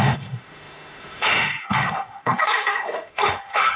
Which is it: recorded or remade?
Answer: remade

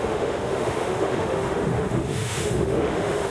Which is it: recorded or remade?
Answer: remade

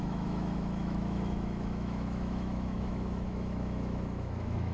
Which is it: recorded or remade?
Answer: remade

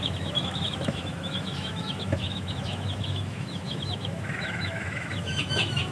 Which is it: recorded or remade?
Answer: remade